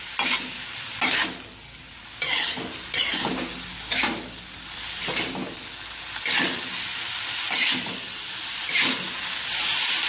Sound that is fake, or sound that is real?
real